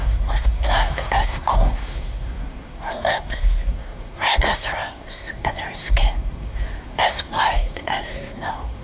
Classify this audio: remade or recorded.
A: remade